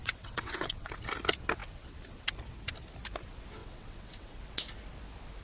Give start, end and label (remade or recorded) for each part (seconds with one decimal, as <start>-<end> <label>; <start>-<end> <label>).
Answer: 0.0-0.9 remade; 0.9-3.6 recorded; 3.6-4.4 remade; 4.4-5.4 recorded